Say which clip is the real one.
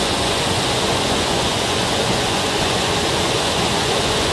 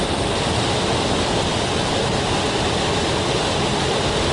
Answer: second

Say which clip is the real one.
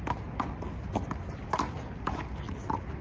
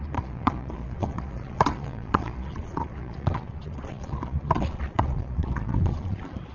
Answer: first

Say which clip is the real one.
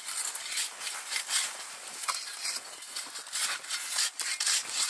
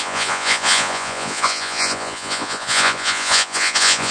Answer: first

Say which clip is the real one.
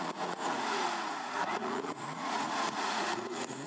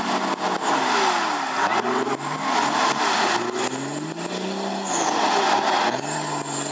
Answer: second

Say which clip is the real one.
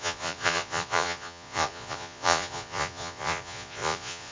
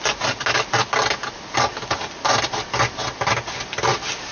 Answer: second